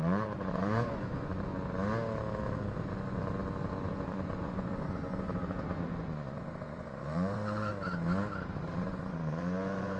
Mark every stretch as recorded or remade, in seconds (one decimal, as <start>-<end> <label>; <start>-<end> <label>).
0.0-1.5 remade; 1.5-3.9 recorded; 3.9-7.7 remade; 7.7-8.5 recorded; 8.5-10.0 remade